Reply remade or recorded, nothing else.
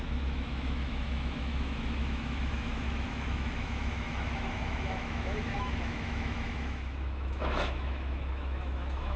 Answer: remade